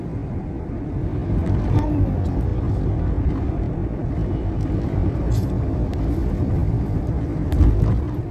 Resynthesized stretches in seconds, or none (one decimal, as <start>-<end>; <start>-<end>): none